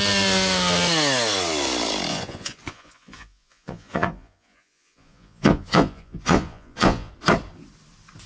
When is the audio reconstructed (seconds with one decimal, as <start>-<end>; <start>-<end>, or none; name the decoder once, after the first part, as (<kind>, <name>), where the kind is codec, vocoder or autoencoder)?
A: 2.1-7.1 (vocoder, Vocos)